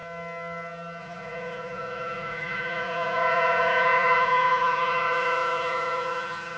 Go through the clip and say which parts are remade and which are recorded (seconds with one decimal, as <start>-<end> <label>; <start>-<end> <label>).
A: 0.0-1.0 recorded; 1.0-6.6 remade